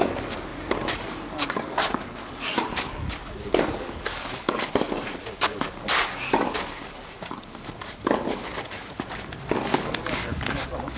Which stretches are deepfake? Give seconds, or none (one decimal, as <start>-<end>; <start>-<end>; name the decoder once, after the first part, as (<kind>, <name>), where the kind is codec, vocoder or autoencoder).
0.0-11.0 (codec, DAC)